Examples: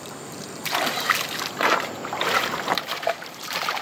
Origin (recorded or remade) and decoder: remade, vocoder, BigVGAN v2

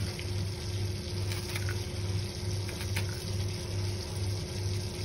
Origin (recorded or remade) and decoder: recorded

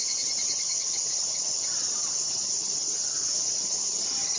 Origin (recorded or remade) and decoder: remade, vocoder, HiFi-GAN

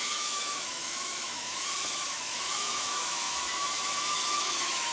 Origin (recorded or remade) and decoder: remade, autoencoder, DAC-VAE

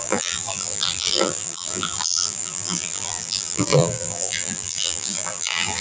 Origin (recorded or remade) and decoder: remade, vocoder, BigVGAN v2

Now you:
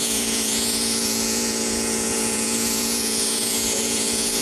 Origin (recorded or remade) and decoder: remade, vocoder, Vocos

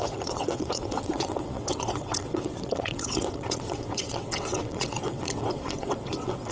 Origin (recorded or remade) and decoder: remade, vocoder, WaveNeXt